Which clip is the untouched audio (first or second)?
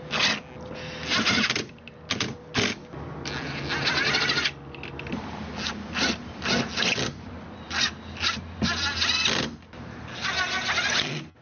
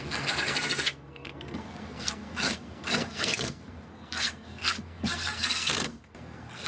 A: first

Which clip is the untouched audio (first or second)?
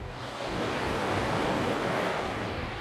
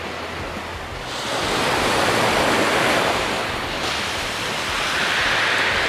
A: second